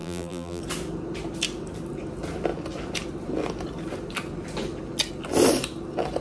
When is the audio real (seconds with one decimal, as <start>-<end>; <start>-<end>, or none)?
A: 0.6-6.2